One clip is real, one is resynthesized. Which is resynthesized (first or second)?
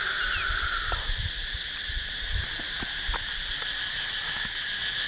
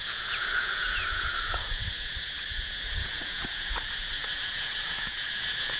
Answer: second